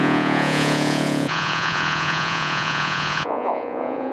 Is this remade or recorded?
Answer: remade